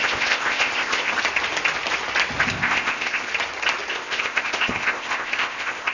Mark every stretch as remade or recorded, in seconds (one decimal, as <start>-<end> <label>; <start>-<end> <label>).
0.0-1.1 remade; 1.1-2.5 recorded; 2.5-3.3 remade; 3.3-3.9 recorded; 3.9-5.9 remade